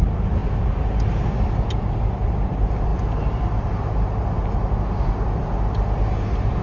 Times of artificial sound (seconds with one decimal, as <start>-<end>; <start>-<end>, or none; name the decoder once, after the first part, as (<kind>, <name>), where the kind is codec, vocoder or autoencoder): none